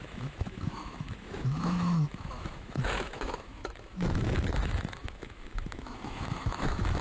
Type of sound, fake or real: fake